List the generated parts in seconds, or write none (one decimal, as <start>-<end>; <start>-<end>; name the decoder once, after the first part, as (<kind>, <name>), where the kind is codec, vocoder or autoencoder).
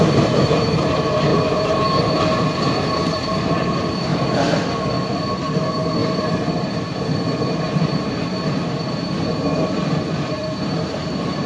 0.0-4.1 (vocoder, BigVGAN v2); 5.3-11.5